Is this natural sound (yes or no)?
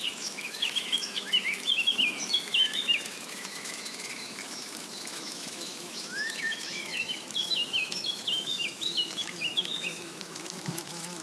no